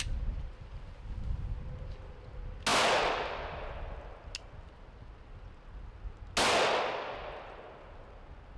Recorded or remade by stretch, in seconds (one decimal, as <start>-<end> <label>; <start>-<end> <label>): 0.0-8.6 recorded